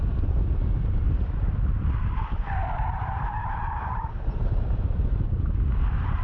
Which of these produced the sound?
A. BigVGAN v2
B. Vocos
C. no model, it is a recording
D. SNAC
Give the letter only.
A